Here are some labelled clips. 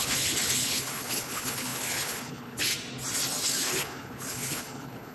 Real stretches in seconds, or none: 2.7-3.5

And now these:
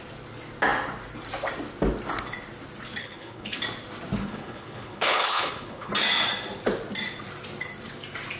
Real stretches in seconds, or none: 0.0-3.0; 3.6-4.2; 5.9-8.4

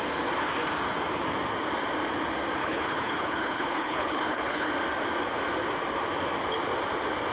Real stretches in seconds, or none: 0.0-2.6; 4.7-7.3

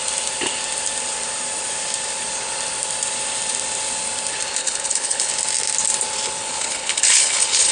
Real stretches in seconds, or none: 0.0-4.6; 5.3-6.4

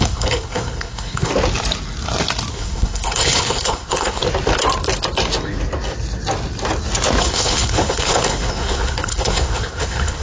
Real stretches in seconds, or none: 1.3-2.5; 4.2-7.2

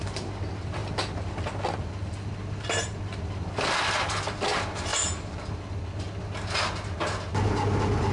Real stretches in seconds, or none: 0.0-8.1

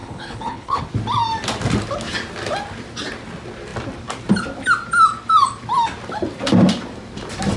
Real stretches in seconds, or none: 0.8-7.6